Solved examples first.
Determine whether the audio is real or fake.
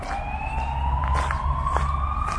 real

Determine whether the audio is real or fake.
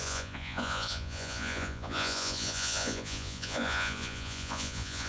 fake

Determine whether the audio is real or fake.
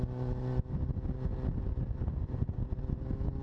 real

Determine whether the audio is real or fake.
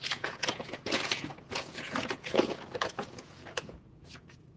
fake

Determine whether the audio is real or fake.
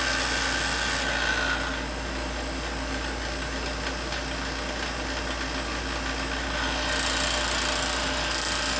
real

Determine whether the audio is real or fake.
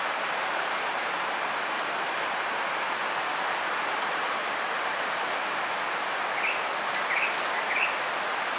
real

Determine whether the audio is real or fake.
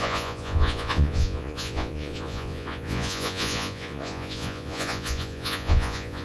fake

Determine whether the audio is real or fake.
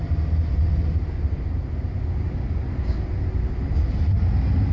real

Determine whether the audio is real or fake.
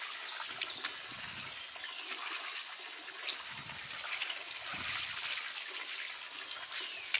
real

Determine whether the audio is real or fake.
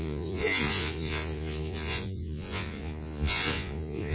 fake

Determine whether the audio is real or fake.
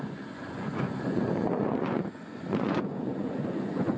fake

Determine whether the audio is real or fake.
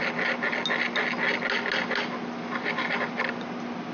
real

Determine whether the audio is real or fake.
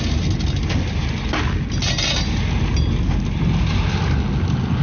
real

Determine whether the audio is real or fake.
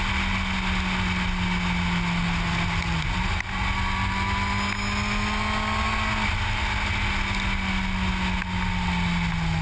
real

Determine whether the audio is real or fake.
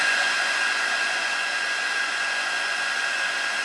fake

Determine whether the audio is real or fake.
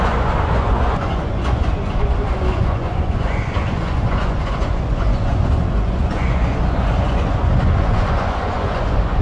fake